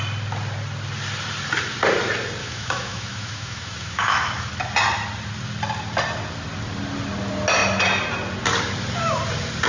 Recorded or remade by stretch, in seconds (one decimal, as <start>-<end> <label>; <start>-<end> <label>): 0.0-2.4 recorded; 2.4-4.5 remade; 4.5-9.7 recorded